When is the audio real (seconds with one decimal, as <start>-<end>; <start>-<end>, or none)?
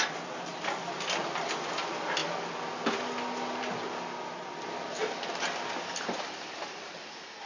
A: 0.0-7.5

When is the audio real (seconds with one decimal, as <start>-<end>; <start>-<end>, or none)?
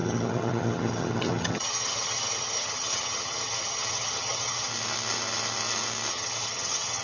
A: 4.7-6.1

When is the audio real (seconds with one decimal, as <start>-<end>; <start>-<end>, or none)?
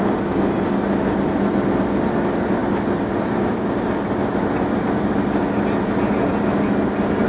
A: 0.0-7.3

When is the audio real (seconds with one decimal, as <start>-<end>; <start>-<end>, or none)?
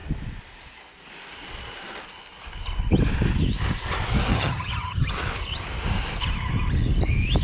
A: 0.0-4.3; 5.1-7.4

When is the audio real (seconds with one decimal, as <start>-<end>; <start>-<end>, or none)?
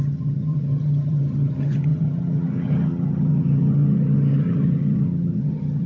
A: none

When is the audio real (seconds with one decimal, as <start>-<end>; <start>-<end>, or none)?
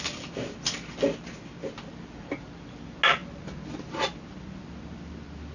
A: 0.0-5.5